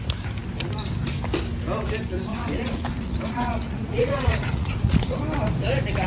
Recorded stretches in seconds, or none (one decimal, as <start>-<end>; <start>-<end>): 0.0-2.3; 5.2-6.1